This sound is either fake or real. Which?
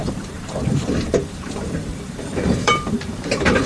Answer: fake